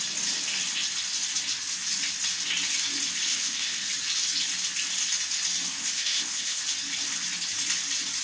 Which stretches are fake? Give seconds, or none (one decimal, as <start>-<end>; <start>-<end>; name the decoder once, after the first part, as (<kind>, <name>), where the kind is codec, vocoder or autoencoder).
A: 3.3-3.9 (codec, ZipCodec); 5.8-6.6

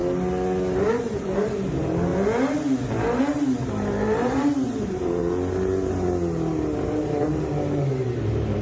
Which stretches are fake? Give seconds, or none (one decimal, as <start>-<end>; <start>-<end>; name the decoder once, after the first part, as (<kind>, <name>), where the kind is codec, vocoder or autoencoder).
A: 0.8-2.1 (vocoder, BigVGAN v2); 3.2-5.2; 6.8-8.6

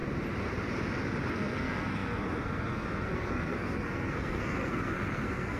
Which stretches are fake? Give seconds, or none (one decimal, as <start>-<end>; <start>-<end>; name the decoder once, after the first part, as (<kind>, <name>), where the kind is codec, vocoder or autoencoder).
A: 1.3-5.6 (codec, SNAC)

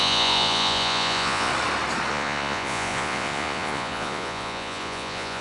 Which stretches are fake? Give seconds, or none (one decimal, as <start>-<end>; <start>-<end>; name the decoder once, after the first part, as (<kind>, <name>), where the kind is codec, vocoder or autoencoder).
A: 0.0-1.5 (vocoder, Vocos); 2.1-5.4

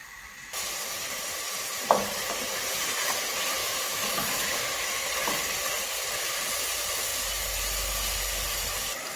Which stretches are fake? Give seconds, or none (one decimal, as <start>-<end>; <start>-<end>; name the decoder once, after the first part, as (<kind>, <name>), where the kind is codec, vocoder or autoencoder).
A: 3.6-5.1 (autoencoder, DAC-VAE)